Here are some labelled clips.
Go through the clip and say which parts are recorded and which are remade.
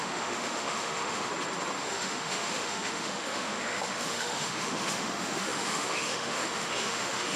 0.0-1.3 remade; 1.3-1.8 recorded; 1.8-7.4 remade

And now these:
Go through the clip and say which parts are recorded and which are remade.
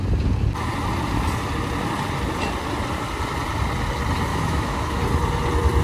0.0-4.3 recorded; 4.3-5.0 remade; 5.0-5.8 recorded